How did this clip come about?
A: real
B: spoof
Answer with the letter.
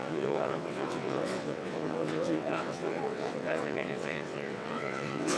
B